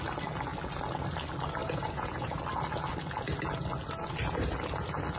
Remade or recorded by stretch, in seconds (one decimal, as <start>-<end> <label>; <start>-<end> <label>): 0.0-1.6 recorded; 1.6-2.4 remade; 2.4-5.2 recorded